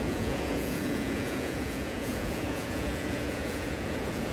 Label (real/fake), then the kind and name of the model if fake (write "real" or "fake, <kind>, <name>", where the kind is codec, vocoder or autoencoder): fake, vocoder, Vocos